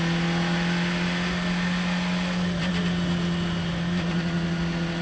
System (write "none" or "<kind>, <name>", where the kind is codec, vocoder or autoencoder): none